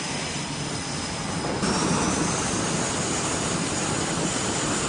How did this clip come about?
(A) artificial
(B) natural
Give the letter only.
B